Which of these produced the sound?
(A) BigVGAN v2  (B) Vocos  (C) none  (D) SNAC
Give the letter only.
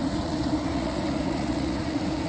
B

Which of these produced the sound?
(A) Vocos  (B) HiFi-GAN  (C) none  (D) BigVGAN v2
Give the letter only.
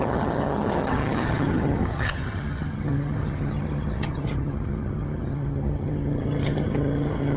B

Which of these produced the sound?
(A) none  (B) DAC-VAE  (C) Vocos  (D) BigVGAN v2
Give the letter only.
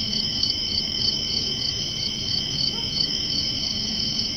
B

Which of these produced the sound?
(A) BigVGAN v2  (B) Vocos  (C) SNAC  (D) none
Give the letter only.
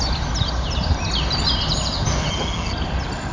D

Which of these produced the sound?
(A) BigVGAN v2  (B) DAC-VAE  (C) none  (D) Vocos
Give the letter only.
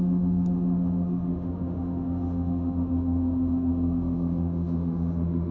B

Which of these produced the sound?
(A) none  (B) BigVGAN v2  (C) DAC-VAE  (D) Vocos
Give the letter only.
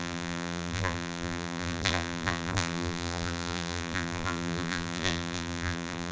B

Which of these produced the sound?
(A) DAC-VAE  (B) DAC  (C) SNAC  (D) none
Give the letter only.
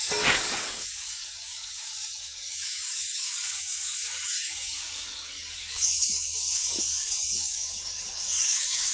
B